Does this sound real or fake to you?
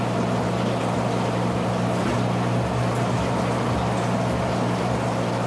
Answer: real